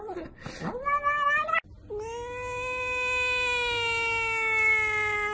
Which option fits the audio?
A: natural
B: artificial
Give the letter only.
A